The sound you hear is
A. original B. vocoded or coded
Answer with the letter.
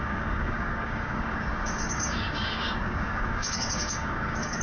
B